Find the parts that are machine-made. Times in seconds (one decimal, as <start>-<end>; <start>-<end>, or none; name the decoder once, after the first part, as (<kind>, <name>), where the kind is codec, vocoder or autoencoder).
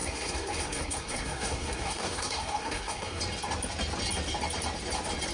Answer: 0.0-3.2 (codec, SNAC)